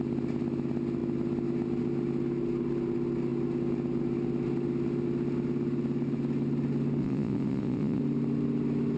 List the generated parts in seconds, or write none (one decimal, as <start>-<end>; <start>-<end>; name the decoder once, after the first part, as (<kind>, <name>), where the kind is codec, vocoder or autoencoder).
7.0-8.0 (vocoder, Vocos)